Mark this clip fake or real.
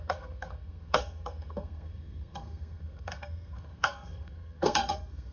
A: fake